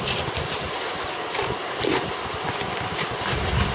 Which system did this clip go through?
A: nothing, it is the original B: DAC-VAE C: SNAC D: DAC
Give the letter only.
A